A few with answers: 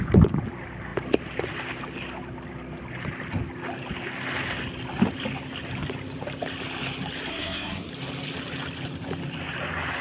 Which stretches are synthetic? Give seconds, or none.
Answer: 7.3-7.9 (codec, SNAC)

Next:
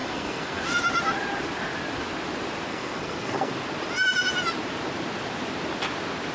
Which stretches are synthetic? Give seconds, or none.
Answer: 0.0-0.6 (codec, SNAC); 2.7-3.5

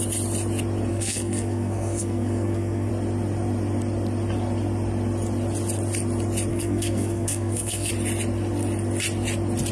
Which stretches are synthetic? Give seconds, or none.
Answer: 0.9-2.9 (codec, SNAC); 6.5-7.9

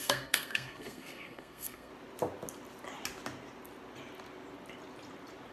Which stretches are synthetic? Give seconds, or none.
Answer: 0.0-1.9 (codec, SNAC)

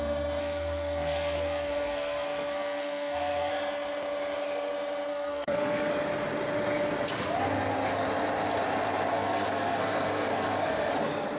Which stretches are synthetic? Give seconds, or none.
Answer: 0.4-3.5 (codec, SNAC); 5.1-5.9; 9.1-10.9

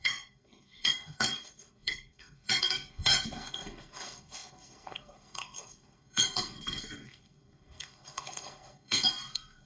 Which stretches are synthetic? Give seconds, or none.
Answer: 0.0-9.7 (codec, SNAC)

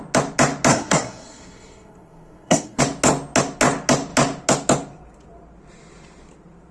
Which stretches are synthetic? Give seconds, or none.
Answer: 0.7-2.8 (codec, SNAC)